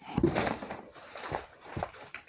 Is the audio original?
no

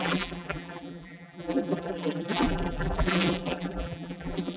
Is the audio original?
no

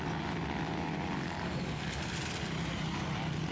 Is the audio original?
yes